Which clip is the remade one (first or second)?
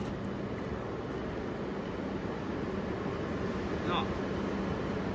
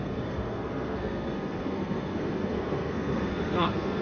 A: second